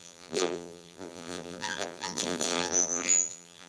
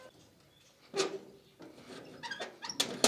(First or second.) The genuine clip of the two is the second